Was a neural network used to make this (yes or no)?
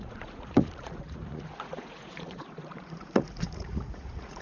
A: yes